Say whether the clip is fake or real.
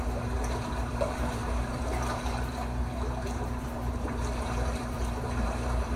fake